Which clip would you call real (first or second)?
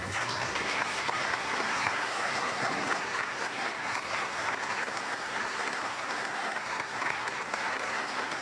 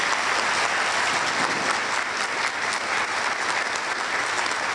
second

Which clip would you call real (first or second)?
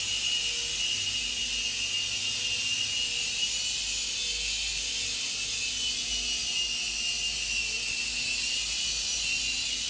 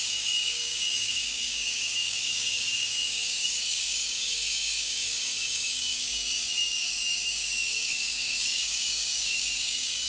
first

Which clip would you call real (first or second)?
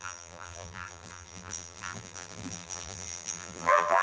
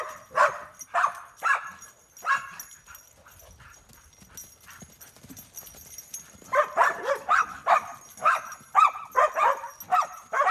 second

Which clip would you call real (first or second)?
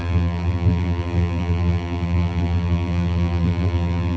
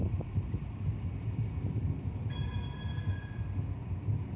second